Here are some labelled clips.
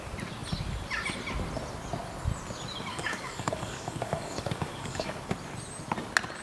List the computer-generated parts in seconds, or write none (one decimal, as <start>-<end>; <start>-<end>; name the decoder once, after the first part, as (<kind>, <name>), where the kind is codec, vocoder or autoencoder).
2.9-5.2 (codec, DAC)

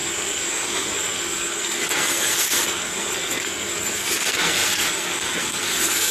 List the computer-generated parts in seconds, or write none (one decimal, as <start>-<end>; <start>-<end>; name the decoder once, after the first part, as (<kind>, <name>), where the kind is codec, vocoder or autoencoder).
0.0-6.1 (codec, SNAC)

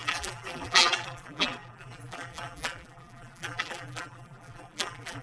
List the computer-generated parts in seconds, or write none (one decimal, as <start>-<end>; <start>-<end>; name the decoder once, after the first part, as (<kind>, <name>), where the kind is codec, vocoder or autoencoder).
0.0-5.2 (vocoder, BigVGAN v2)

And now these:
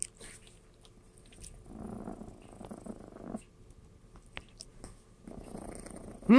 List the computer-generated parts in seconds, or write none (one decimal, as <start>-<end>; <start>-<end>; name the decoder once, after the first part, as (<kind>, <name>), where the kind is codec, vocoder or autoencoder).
none

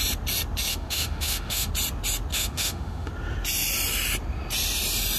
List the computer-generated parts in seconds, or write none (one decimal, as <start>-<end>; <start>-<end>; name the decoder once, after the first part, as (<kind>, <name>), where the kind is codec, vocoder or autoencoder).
0.7-1.7 (autoencoder, DAC-VAE); 2.3-3.1

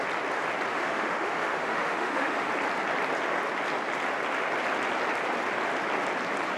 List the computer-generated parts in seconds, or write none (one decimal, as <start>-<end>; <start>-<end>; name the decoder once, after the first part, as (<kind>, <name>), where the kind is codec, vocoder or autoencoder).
0.7-2.5 (autoencoder, DAC-VAE)

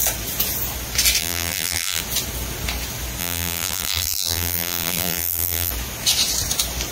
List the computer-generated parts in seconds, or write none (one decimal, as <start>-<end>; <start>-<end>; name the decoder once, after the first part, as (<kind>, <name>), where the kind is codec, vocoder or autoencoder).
1.2-2.0 (vocoder, BigVGAN v2); 3.2-5.7

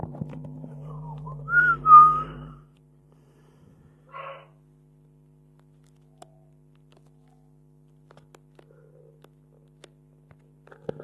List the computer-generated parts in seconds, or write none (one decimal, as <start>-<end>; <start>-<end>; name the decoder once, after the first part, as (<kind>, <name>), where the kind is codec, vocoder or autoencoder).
0.0-3.8 (vocoder, BigVGAN v2)